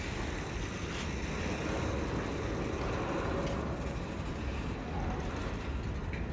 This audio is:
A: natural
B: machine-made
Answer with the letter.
A